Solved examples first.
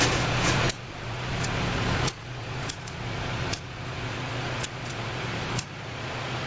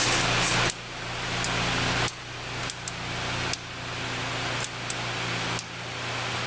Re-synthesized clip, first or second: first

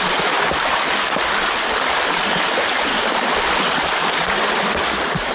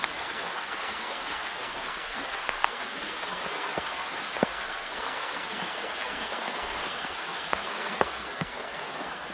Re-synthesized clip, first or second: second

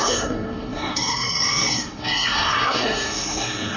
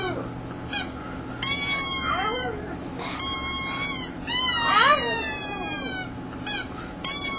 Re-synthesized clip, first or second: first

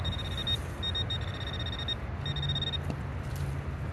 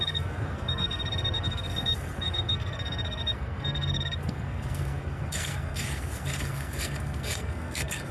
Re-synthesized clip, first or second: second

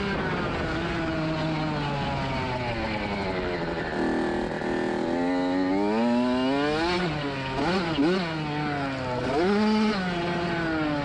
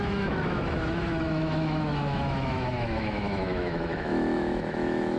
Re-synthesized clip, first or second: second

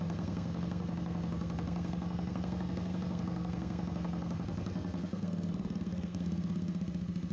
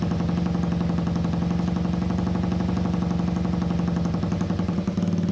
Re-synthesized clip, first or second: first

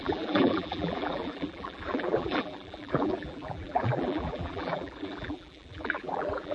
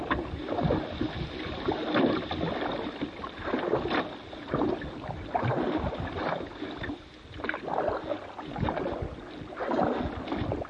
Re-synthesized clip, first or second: first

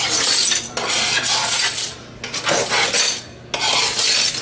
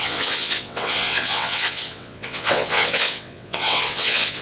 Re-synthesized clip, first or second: second